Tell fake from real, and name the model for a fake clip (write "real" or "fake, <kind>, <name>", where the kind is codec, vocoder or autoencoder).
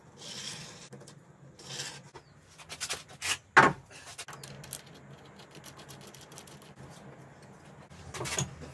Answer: real